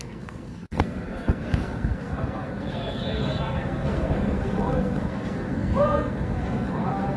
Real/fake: fake